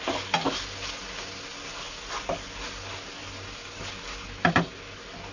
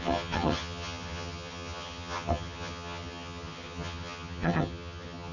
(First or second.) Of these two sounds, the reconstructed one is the second